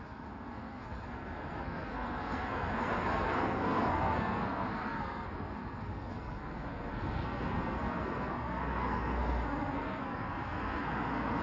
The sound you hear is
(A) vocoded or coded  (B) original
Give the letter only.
A